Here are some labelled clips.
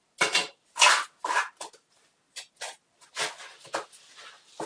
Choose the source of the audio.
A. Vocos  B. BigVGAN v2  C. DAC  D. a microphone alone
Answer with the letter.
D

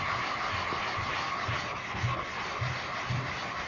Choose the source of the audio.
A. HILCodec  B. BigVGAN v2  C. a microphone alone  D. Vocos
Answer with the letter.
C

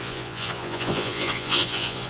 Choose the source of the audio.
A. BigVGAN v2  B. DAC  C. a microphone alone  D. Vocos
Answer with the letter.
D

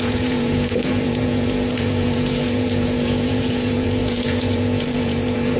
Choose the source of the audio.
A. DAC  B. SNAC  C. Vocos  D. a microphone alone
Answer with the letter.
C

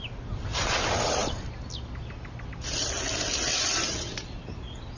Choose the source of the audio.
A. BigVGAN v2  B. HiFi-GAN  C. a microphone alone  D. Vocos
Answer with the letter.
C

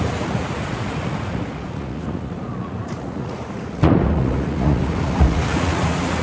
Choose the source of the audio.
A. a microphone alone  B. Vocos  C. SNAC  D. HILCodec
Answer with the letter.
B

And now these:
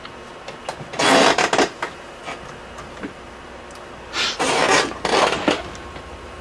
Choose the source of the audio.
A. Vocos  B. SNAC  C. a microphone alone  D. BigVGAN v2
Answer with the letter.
C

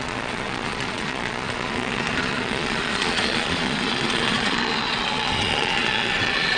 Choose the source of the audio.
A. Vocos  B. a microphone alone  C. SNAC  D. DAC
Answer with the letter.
A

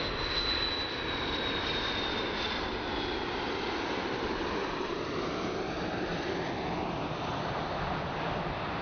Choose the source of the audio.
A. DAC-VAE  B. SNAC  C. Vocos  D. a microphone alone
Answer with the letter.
D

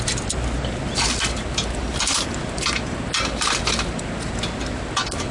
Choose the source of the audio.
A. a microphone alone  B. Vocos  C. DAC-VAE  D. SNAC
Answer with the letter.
A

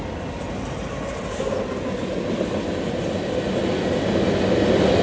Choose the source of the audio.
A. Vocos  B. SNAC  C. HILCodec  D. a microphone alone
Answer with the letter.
D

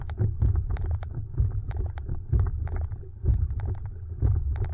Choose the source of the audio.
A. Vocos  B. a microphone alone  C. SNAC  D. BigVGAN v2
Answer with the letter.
B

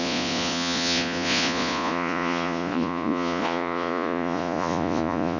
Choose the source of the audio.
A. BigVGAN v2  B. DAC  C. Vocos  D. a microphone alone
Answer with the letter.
C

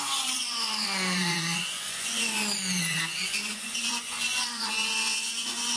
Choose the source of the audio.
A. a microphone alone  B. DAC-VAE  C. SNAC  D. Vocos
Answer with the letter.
D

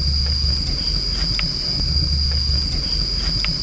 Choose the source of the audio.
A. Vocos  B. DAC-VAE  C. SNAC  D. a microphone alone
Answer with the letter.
D